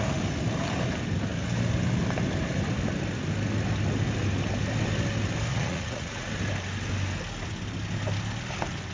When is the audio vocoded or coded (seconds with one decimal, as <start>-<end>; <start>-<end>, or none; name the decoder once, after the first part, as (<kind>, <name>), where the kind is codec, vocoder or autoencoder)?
5.5-6.3 (vocoder, Vocos)